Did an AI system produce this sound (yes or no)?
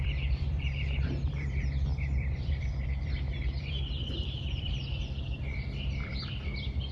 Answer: yes